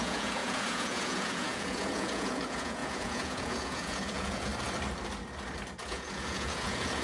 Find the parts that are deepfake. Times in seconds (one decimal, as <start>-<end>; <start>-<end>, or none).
0.0-4.5; 5.8-7.0